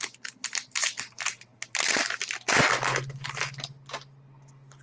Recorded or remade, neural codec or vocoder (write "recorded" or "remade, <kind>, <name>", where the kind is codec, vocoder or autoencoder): recorded